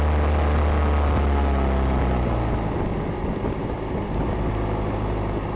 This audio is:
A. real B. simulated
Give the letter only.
A